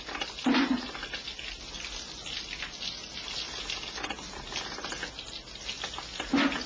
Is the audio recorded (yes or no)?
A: yes